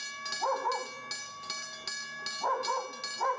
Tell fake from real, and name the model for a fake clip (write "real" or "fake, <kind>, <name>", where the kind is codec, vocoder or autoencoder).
real